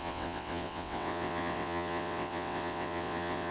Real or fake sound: fake